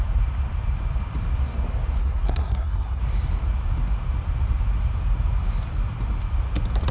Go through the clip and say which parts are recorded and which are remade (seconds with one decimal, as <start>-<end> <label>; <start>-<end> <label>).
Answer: 0.0-2.0 recorded; 2.0-3.0 remade; 3.0-6.9 recorded

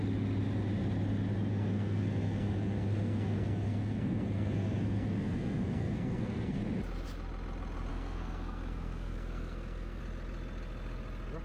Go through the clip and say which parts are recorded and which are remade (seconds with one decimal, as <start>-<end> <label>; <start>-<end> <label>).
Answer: 0.0-1.5 recorded; 1.5-6.6 remade; 6.6-7.9 recorded; 7.9-10.0 remade; 10.0-11.4 recorded

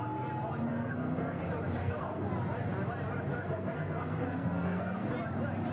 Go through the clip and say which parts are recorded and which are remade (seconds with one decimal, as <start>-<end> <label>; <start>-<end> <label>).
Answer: 0.0-0.7 recorded; 0.7-1.4 remade; 1.4-1.8 recorded; 1.8-2.3 remade; 2.3-3.3 recorded; 3.3-5.1 remade; 5.1-5.7 recorded

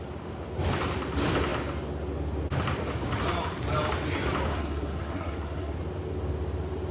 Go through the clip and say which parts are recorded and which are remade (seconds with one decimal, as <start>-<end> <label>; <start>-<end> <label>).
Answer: 0.0-4.5 recorded; 4.5-5.8 remade; 5.8-6.9 recorded

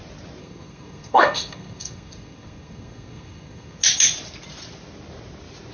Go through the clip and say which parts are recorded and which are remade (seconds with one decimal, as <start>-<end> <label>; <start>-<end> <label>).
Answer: 0.0-0.4 recorded; 0.4-3.8 remade; 3.8-5.7 recorded

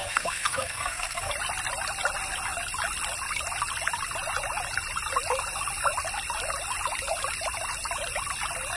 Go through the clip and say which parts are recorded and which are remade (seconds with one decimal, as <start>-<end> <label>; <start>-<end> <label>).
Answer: 0.0-1.3 remade; 1.3-8.8 recorded